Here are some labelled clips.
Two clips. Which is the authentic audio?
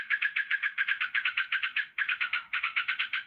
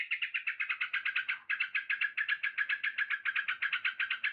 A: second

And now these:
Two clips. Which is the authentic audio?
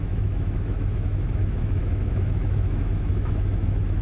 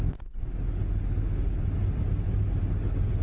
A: second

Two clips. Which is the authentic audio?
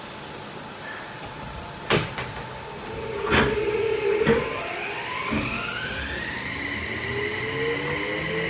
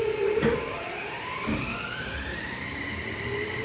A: first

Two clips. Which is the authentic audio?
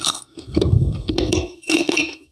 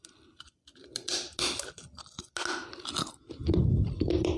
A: second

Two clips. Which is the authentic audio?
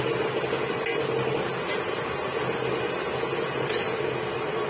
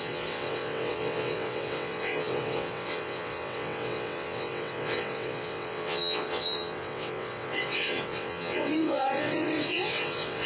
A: first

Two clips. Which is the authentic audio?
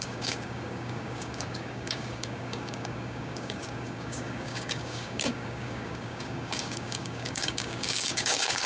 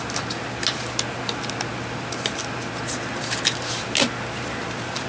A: second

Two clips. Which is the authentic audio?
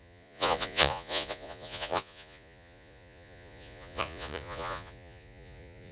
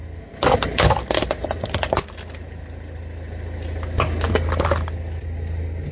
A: second